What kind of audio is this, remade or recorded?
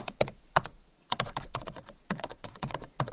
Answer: remade